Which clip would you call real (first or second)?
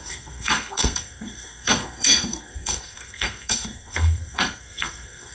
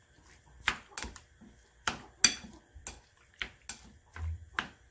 second